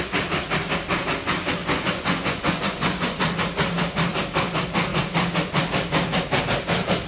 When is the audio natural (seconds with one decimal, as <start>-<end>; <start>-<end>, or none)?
0.0-1.6; 3.2-7.1

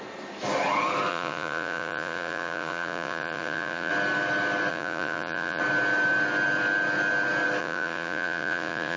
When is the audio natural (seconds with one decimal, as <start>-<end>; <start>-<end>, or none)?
0.0-1.1; 3.9-4.7; 5.6-7.6

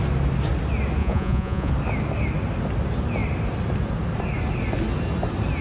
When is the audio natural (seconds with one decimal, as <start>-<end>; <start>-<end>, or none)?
0.0-1.0; 1.7-5.6

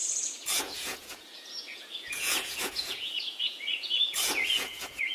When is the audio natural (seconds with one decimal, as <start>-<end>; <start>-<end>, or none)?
none

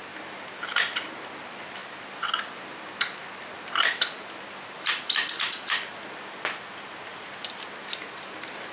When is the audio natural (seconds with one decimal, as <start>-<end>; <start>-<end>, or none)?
0.0-8.7

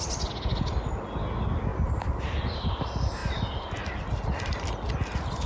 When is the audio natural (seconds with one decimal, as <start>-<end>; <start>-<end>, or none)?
0.0-5.5